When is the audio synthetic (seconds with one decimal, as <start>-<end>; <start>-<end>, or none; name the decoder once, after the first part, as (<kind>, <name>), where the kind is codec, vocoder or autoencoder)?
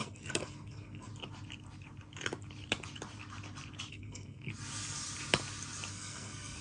0.0-1.1 (codec, SNAC); 3.9-4.5; 5.9-6.6